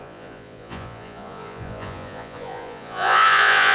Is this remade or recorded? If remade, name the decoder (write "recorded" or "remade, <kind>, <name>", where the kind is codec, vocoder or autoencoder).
remade, vocoder, Vocos